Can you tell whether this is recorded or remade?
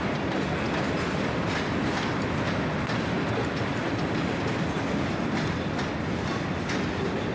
recorded